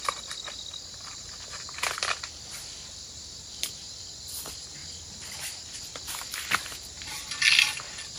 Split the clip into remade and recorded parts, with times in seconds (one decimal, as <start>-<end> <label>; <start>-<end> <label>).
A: 0.0-8.2 recorded